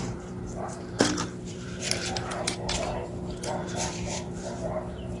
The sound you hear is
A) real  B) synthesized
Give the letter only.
B